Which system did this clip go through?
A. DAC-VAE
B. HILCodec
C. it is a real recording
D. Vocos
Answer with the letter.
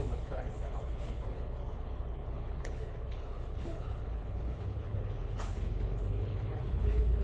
B